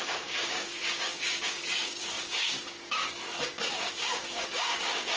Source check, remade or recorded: remade